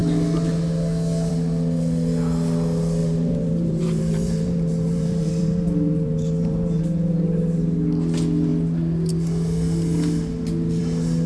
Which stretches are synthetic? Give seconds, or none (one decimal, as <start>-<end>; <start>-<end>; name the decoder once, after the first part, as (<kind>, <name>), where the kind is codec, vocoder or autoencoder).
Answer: 3.0-6.8 (vocoder, BigVGAN v2)